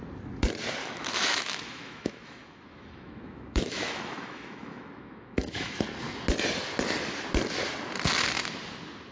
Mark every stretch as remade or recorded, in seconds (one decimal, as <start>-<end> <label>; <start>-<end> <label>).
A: 0.0-0.8 recorded; 0.8-5.8 remade; 5.8-9.1 recorded